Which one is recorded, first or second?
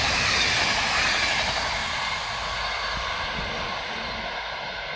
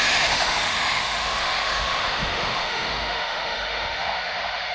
first